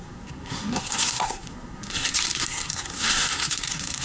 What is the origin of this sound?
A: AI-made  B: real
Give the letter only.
A